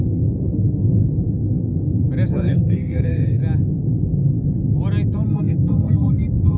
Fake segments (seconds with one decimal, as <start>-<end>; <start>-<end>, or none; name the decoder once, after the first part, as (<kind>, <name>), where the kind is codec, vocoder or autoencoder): 0.0-1.0 (codec, SNAC); 2.3-3.4; 5.3-6.6